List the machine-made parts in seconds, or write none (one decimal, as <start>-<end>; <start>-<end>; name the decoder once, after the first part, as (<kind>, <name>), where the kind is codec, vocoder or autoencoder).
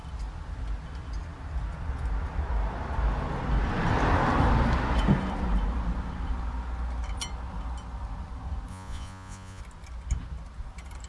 8.7-9.6 (vocoder, Vocos)